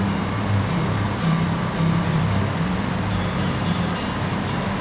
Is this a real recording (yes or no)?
no